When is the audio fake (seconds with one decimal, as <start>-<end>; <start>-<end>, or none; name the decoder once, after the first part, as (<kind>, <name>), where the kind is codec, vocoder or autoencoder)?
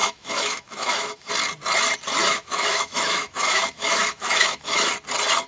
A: 0.0-1.3 (autoencoder, DAC-VAE); 2.2-4.9